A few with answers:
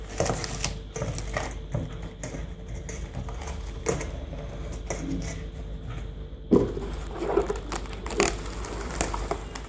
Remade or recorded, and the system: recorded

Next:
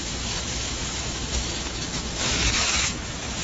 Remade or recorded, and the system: remade, autoencoder, DAC-VAE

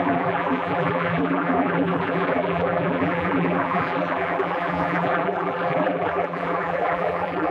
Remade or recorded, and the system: remade, vocoder, BigVGAN v2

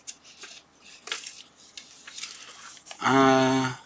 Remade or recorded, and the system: recorded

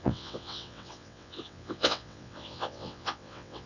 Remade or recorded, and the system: remade, vocoder, WaveNeXt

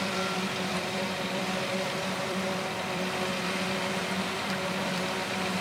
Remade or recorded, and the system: remade, vocoder, BigVGAN v2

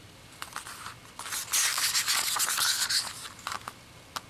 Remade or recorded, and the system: recorded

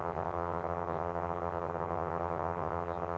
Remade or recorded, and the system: remade, vocoder, HiFi-GAN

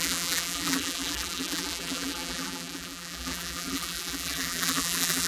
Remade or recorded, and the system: remade, vocoder, BigVGAN v2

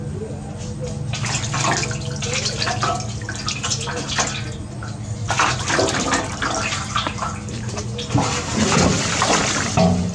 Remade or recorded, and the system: recorded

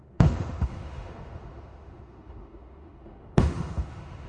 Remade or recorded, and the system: remade, autoencoder, DAC-VAE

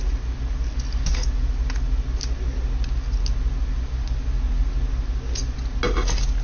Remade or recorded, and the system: recorded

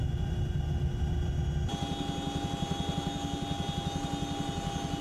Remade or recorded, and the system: recorded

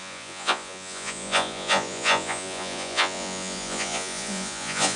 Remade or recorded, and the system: remade, vocoder, Vocos